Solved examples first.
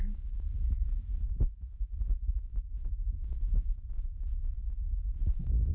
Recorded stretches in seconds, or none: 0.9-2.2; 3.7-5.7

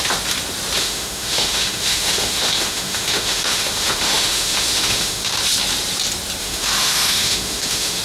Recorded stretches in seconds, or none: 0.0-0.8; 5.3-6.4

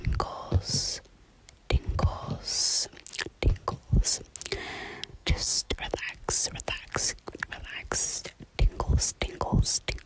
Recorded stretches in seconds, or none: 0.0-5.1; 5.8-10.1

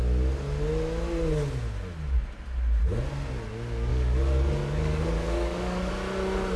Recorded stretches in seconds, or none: 0.0-3.9; 5.9-6.6

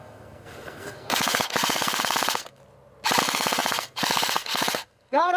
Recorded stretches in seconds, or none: 2.6-3.2